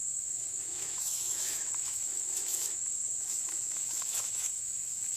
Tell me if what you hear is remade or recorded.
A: remade